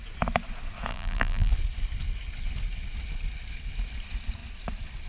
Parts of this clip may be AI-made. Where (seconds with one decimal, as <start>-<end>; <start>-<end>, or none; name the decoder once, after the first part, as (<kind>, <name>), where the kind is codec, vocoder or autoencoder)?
0.9-1.5 (vocoder, BigVGAN v2)

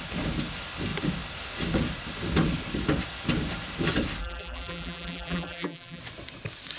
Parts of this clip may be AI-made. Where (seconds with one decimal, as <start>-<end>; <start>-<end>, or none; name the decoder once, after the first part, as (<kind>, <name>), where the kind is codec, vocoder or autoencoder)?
4.2-6.0 (vocoder, BigVGAN v2)

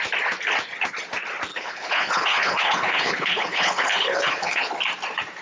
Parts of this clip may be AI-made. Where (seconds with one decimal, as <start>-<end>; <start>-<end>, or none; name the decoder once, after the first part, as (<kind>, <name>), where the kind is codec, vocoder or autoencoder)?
1.5-4.7 (codec, HILCodec)

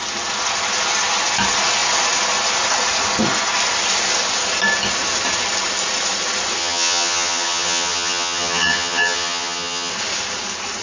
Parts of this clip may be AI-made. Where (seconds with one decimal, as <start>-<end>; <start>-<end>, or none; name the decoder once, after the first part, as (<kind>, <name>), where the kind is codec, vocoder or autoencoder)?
6.6-9.9 (vocoder, HiFi-GAN)

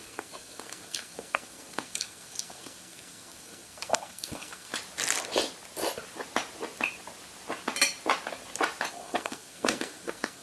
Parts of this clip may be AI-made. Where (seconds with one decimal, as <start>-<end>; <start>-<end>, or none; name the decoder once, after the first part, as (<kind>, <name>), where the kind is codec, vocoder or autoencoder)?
0.0-4.7 (codec, SNAC); 8.9-10.4